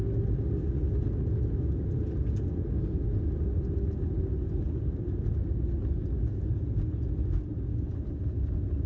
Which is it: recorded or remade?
recorded